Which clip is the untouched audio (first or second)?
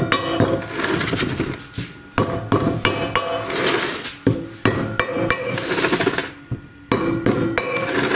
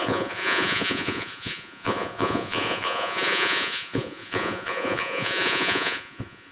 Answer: first